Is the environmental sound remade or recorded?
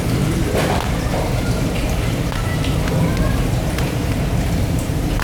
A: remade